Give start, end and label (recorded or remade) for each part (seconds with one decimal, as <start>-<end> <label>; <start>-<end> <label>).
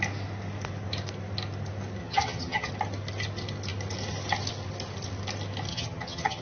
0.0-2.0 recorded; 2.0-2.7 remade; 2.7-5.7 recorded; 5.7-6.4 remade